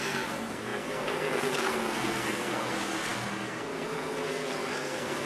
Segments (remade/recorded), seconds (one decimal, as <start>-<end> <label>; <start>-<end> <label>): 0.0-5.3 remade